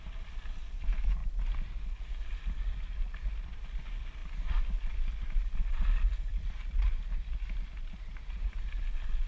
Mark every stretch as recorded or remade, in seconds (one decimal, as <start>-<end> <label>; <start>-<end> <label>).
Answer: 0.0-6.3 recorded; 6.3-7.0 remade; 7.0-9.3 recorded